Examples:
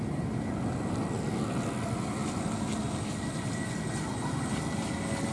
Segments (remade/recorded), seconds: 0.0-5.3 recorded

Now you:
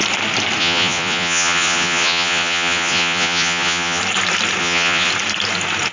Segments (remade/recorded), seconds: 0.0-0.6 recorded; 0.6-4.0 remade; 4.0-4.6 recorded; 4.6-5.1 remade; 5.1-5.9 recorded

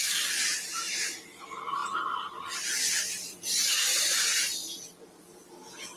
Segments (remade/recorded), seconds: 0.0-6.0 remade

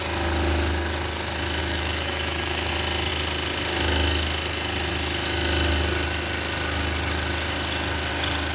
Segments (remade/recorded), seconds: 0.0-1.6 recorded; 1.6-2.7 remade; 2.7-8.5 recorded

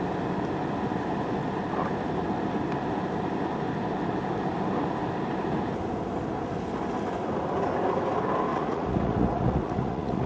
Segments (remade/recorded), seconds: 0.0-8.5 recorded; 8.5-10.3 remade

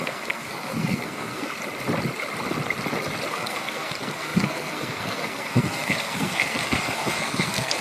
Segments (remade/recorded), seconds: 0.0-1.5 remade; 1.5-3.3 recorded; 3.3-7.8 remade

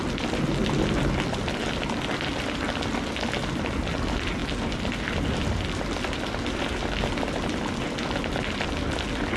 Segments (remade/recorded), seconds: 0.0-9.4 recorded

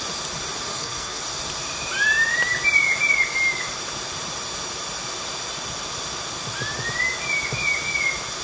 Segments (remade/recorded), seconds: 0.0-0.7 recorded; 0.7-1.2 remade; 1.2-8.4 recorded